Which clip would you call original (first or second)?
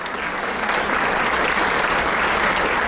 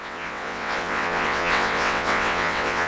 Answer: first